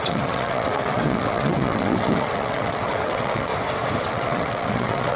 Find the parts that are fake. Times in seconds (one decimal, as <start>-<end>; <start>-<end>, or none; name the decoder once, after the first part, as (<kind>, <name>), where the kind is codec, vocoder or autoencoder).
0.0-3.5 (vocoder, WaveNeXt); 4.0-5.2